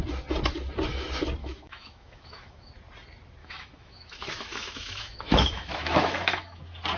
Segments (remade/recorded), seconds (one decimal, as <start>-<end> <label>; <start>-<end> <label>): 0.0-1.4 recorded; 1.4-2.7 remade; 2.7-3.4 recorded; 3.4-6.6 remade; 6.6-7.0 recorded